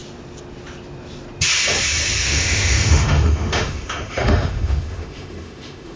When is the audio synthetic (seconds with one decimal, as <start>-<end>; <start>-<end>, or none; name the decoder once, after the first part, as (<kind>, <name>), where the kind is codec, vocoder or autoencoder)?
2.2-6.0 (autoencoder, DAC-VAE)